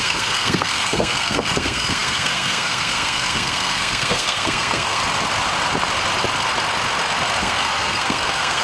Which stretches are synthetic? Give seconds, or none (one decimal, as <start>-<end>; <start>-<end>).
0.0-5.0; 7.4-8.6